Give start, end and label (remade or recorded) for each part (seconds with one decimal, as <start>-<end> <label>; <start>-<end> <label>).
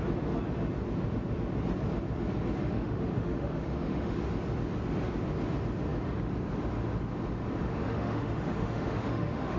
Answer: 0.0-2.6 recorded; 2.6-4.3 remade; 4.3-7.7 recorded; 7.7-9.6 remade